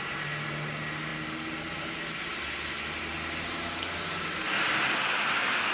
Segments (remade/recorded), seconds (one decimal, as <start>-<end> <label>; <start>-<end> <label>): 0.0-5.7 recorded